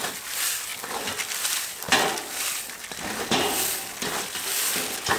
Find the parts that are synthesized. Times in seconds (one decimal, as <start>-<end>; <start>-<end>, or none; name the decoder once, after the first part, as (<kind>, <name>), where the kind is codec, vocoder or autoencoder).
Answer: none